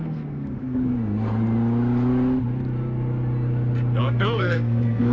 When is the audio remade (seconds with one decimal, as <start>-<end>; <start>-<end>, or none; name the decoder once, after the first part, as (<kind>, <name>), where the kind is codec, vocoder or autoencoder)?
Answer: 0.0-0.9 (codec, SNAC); 4.0-5.1

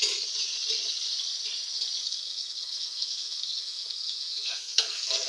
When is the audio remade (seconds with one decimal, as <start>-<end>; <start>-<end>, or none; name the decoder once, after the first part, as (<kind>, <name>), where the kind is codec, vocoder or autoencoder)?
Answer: 2.0-5.3 (codec, SNAC)

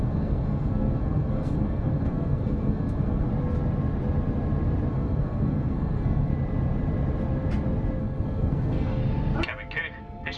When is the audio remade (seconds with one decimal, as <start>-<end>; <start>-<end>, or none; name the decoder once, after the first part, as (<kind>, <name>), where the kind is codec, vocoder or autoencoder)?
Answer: 0.0-3.3 (codec, SNAC); 4.9-6.3; 8.0-9.0; 10.0-10.4

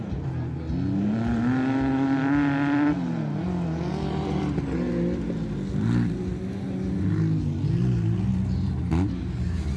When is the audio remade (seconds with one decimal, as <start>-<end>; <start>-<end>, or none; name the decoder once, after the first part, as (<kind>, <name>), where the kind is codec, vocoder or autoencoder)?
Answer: none

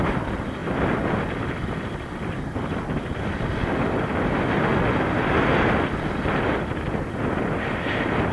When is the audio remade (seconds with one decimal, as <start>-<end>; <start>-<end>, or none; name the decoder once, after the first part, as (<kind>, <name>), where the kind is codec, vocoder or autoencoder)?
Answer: none